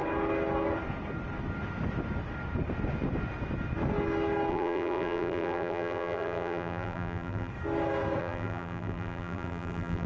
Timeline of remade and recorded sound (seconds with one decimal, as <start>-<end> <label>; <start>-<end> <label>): 0.0-4.5 recorded; 4.5-7.5 remade; 7.5-8.2 recorded; 8.2-10.1 remade